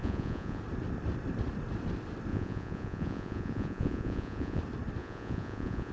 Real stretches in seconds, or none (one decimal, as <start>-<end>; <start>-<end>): 0.6-2.3; 4.6-5.0